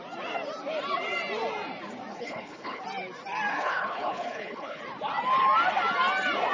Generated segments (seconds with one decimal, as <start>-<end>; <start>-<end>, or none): 2.1-2.8; 3.5-4.8